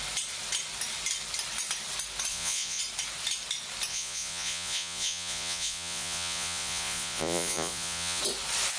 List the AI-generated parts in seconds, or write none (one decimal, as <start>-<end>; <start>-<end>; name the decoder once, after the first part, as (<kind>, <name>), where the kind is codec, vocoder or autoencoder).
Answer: 2.3-2.8 (vocoder, Vocos); 3.9-8.2